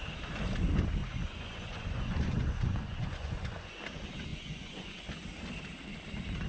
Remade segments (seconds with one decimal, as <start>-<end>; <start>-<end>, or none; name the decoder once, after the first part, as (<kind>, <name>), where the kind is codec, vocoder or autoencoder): 1.0-3.8 (vocoder, Vocos); 4.3-5.1